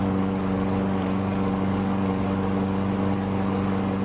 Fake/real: fake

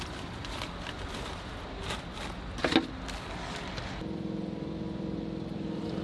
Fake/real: real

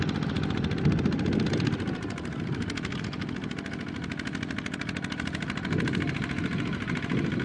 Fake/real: real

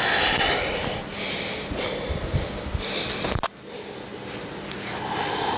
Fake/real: real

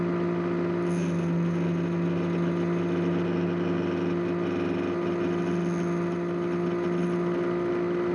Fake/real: real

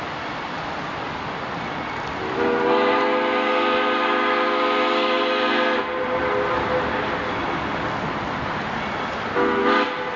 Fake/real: real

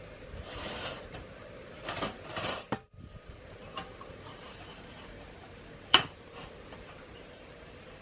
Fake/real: fake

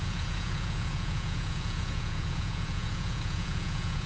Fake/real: fake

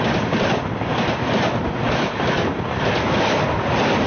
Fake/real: real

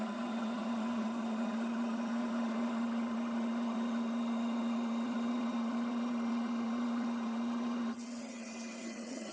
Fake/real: fake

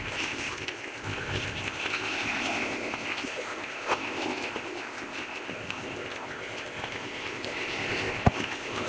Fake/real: fake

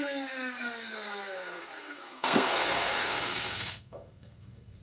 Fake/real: fake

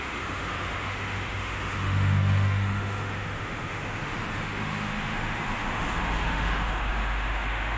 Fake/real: fake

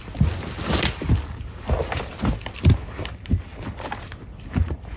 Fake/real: real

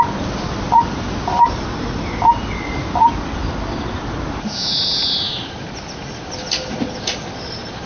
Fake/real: real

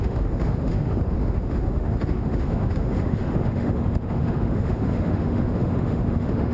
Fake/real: fake